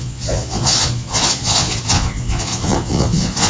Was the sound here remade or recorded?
remade